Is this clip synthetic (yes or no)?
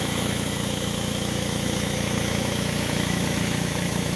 yes